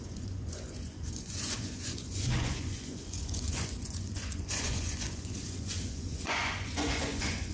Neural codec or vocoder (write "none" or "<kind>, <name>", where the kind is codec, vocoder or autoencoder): vocoder, Vocos